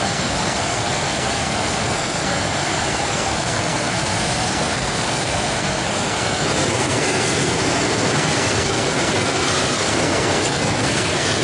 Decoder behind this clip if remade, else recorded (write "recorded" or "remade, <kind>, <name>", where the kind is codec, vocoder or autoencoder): remade, codec, SNAC